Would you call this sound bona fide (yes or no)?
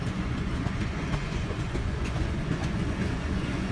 no